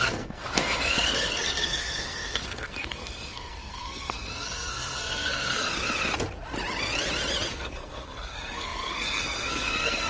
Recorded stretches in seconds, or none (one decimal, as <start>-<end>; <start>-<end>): 5.7-7.5